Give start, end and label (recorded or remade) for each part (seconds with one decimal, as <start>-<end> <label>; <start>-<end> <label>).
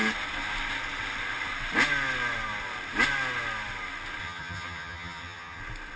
0.0-4.2 recorded; 4.2-5.6 remade; 5.6-6.0 recorded